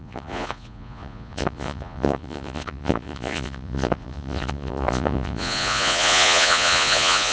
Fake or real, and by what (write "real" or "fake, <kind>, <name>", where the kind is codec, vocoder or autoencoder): fake, vocoder, Vocos